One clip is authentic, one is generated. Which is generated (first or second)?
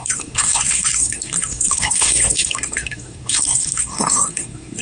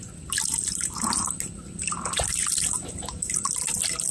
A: first